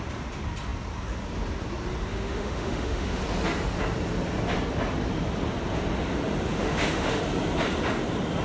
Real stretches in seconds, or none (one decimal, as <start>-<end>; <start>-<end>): 0.0-2.1; 3.2-6.5; 7.2-8.4

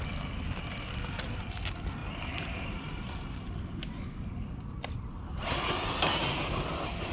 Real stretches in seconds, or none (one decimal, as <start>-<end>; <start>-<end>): 0.0-7.1

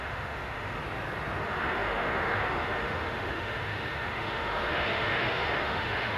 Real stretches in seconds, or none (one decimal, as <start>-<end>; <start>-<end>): 0.8-1.4

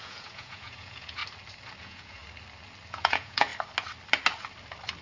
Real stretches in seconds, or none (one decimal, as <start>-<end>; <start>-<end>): 1.2-1.8; 2.2-2.9; 3.5-5.0

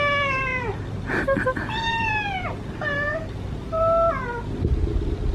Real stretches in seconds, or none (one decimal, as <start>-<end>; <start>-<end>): 0.0-5.3

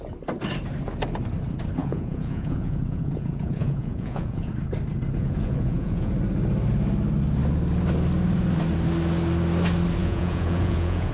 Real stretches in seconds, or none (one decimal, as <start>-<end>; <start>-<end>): 0.0-1.8; 4.5-5.2; 6.1-10.0

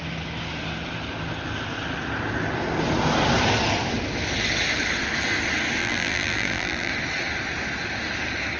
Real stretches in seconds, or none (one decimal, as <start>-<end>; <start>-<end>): 0.0-5.8; 6.9-8.6